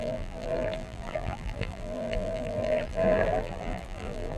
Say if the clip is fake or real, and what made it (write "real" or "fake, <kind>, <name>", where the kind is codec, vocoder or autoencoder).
fake, vocoder, BigVGAN v2